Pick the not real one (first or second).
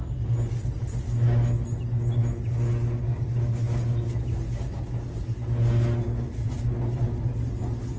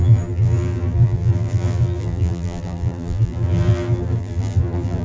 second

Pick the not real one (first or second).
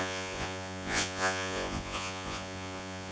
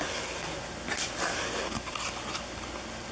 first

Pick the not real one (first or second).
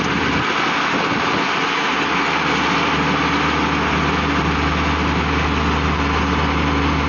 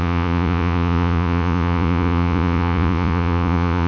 second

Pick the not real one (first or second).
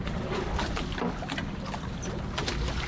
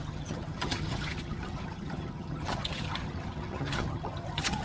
second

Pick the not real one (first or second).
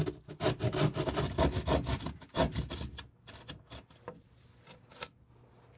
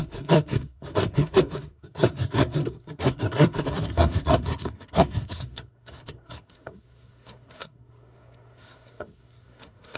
second